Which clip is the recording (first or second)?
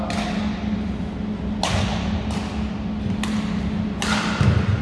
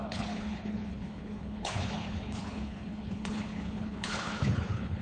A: first